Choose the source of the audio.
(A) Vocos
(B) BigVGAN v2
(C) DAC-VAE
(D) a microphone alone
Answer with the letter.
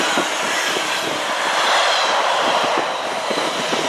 D